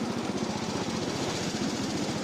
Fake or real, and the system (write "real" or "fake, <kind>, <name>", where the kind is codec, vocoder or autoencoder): real